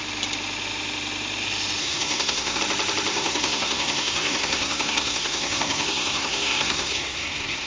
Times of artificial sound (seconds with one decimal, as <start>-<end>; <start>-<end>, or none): 1.8-2.6; 3.1-7.7